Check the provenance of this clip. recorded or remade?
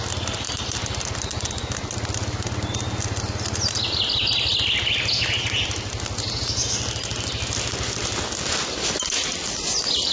recorded